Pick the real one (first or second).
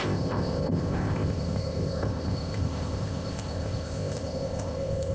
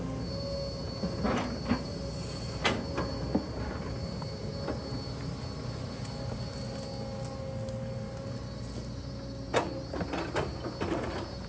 second